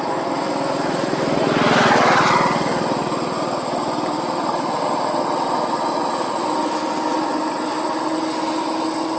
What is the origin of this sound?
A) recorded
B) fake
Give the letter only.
A